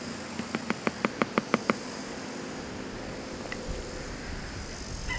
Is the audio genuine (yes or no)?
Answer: yes